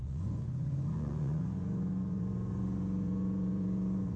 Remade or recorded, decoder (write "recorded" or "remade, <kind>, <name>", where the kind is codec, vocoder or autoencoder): remade, vocoder, Vocos